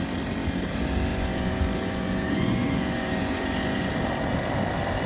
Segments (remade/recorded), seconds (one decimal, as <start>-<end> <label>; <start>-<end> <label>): 0.0-1.1 recorded; 1.1-3.9 remade; 3.9-5.1 recorded